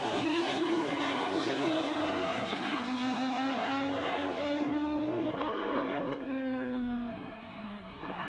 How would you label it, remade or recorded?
remade